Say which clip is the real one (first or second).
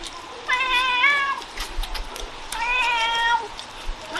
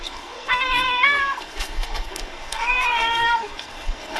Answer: first